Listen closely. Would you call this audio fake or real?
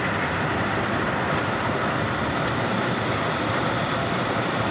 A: fake